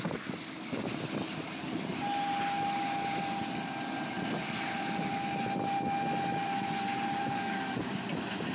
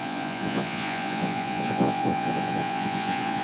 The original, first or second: first